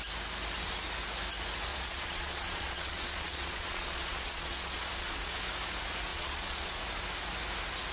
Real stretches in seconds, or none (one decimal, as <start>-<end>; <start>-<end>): 0.0-1.7; 5.4-6.1; 6.8-7.9